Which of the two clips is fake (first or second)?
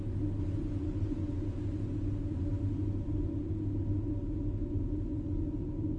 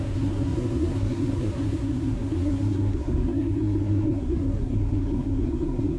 second